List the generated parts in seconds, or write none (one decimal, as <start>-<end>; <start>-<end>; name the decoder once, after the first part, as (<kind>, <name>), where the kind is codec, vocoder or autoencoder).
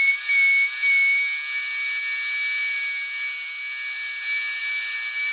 none